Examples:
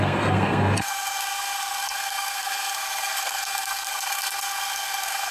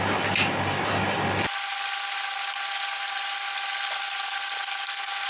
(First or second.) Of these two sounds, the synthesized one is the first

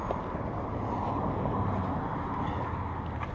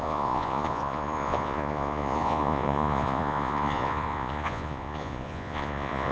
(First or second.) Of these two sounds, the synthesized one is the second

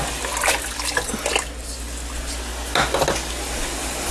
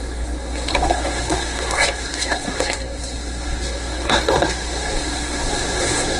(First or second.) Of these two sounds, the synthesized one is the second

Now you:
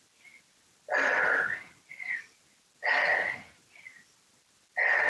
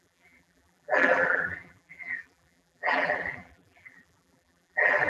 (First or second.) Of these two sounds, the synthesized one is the second